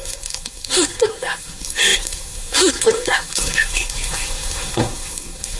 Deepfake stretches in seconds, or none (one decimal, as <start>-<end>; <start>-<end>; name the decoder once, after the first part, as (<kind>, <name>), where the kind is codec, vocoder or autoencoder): 0.0-5.6 (codec, SNAC)